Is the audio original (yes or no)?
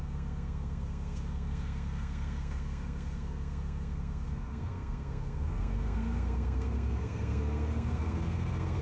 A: no